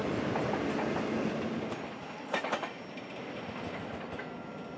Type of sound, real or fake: real